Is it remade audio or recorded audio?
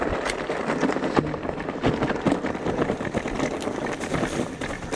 recorded